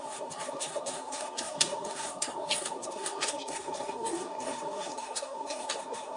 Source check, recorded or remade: remade